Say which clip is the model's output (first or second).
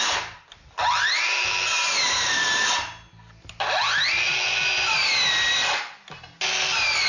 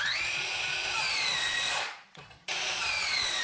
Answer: second